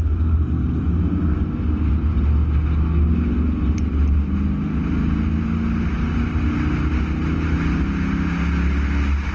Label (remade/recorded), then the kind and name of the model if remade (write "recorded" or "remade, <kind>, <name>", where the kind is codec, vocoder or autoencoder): recorded